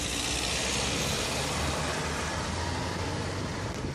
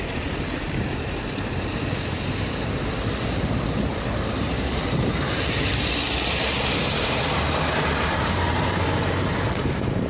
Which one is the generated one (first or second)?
second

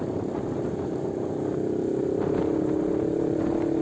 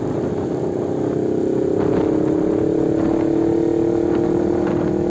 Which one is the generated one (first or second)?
first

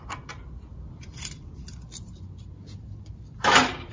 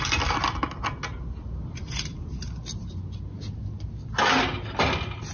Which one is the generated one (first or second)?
first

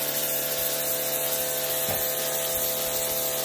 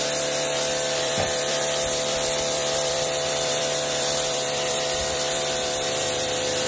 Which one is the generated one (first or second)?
second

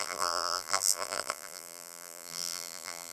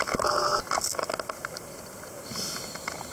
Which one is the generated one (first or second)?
first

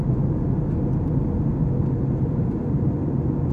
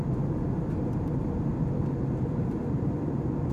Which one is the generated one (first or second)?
second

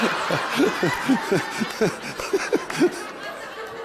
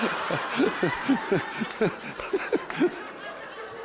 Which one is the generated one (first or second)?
second